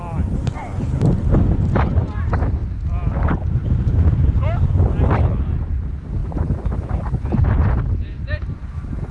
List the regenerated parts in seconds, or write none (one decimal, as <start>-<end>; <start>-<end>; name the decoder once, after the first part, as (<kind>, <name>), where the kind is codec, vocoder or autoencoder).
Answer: none